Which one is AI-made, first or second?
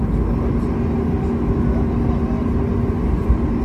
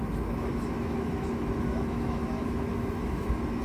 second